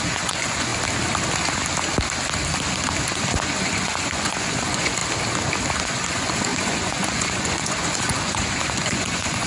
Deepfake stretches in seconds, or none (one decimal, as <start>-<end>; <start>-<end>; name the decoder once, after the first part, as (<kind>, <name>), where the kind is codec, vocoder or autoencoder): 0.0-0.7 (vocoder, Vocos); 3.1-5.0; 5.8-9.5